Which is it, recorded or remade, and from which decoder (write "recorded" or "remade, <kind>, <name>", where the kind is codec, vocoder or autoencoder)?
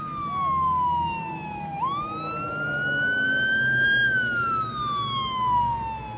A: recorded